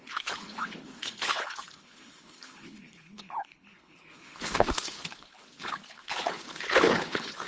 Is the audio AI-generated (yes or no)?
yes